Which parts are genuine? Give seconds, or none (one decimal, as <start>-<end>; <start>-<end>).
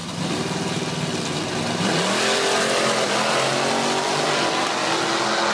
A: 0.0-5.5